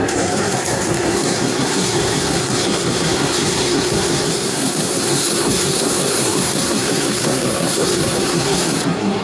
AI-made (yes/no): yes